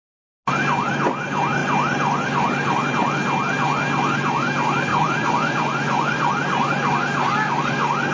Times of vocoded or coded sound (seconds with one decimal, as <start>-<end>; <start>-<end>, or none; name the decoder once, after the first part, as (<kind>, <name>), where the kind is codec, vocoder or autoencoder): 4.9-6.3 (vocoder, Vocos)